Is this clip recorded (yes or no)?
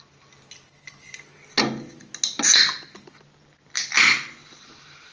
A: yes